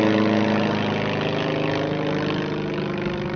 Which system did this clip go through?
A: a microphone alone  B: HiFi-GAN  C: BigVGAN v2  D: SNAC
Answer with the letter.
A